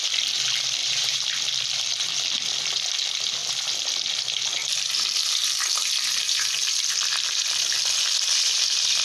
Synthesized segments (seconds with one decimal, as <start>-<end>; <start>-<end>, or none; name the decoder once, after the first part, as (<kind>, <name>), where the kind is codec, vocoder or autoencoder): 0.8-1.3 (vocoder, BigVGAN v2)